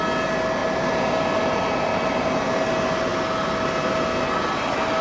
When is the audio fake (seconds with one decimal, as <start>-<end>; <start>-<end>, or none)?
0.6-1.5